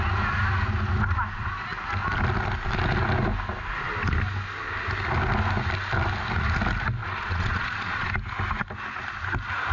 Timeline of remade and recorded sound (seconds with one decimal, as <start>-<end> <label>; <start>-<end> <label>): 0.0-7.0 recorded; 7.0-8.1 remade; 8.1-9.7 recorded